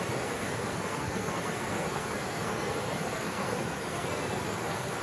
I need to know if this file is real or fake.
fake